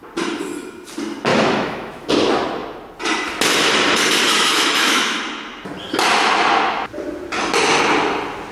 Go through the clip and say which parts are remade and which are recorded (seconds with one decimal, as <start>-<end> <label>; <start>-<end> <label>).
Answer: 0.0-1.3 recorded; 1.3-2.1 remade; 2.1-4.3 recorded; 4.3-5.2 remade; 5.2-8.5 recorded